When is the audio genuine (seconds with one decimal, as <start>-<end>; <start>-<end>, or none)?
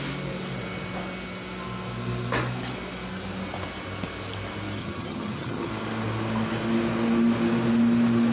0.0-4.8; 5.7-8.3